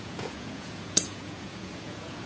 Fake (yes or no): yes